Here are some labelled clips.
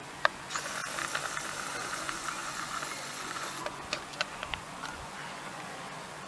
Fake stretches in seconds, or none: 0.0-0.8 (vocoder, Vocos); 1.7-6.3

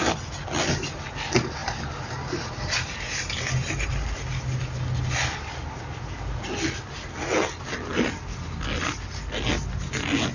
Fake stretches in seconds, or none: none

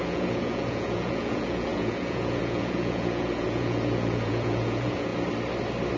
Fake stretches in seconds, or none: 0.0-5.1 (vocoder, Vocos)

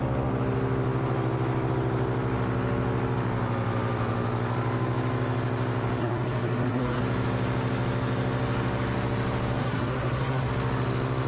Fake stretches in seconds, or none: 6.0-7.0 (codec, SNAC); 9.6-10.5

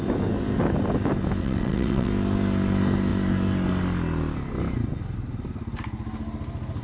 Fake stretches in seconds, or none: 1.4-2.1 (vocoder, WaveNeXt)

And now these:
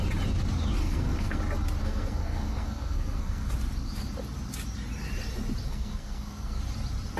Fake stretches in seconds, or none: 0.8-1.4 (codec, SNAC); 1.8-3.5; 5.7-6.6